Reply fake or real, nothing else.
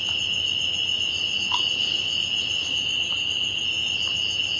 real